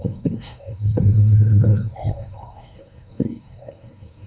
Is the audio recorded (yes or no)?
no